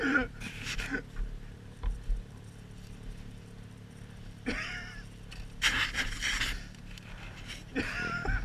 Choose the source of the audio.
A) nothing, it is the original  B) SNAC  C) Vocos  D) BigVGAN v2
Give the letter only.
D